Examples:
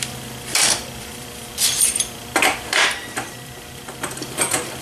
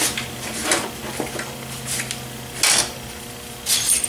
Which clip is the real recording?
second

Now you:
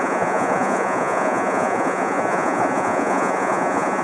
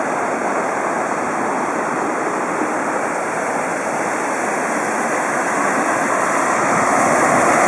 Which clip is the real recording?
second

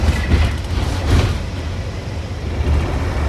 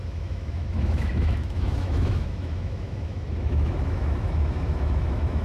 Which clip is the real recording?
first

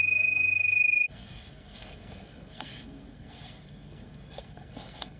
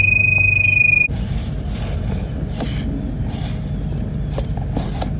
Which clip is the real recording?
second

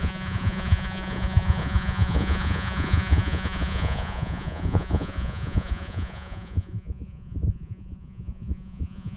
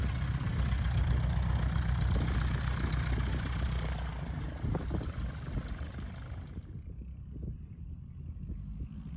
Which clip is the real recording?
second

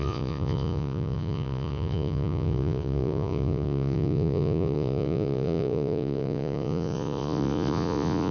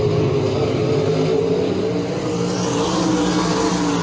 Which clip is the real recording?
second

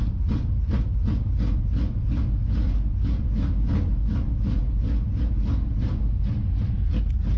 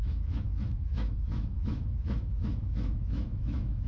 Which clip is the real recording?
first